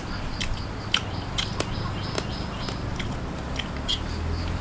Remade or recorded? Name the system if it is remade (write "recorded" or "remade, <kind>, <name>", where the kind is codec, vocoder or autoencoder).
recorded